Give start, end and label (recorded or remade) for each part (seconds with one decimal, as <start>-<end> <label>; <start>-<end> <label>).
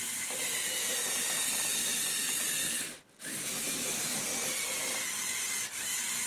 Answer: 0.0-6.3 recorded